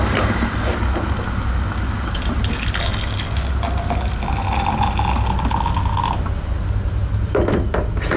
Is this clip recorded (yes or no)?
yes